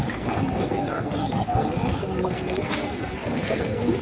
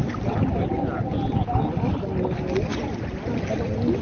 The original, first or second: second